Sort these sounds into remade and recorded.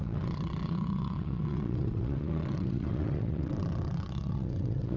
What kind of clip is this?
remade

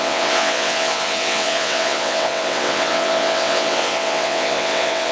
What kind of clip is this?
remade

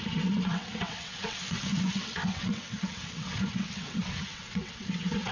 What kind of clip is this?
remade